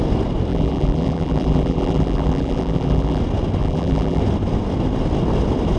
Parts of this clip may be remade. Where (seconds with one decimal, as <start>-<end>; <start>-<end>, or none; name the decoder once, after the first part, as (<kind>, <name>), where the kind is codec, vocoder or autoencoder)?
0.5-3.2 (vocoder, BigVGAN v2); 3.6-4.2